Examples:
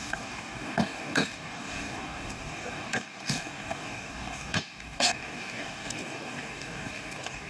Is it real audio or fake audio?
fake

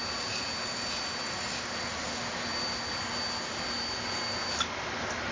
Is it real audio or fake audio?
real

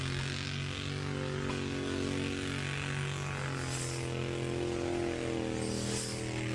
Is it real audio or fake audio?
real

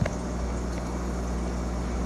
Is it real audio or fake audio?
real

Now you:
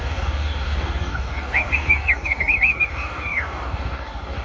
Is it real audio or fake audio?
fake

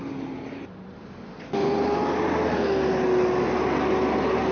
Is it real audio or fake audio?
real